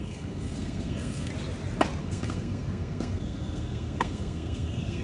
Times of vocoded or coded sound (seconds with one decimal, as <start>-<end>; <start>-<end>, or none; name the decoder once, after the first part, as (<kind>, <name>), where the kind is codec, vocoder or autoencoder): 0.0-1.3 (codec, SNAC); 2.0-5.0